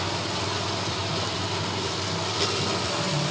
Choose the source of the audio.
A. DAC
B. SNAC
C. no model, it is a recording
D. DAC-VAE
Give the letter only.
C